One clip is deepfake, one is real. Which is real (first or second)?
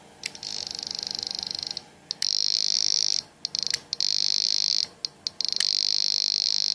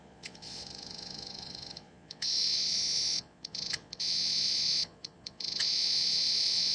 first